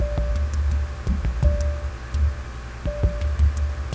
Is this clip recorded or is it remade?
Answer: recorded